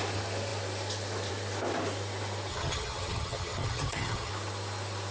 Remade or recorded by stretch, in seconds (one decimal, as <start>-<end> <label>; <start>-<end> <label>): 0.0-2.5 recorded; 2.5-4.3 remade; 4.3-5.1 recorded